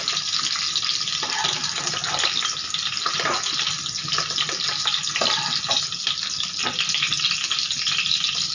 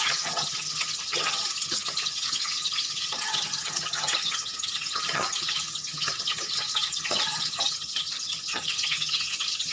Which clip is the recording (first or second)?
first